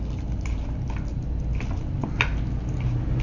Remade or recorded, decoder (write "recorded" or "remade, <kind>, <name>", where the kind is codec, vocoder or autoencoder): recorded